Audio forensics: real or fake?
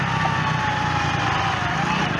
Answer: real